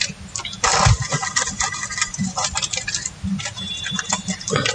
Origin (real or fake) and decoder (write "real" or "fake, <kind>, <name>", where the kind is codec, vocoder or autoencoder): real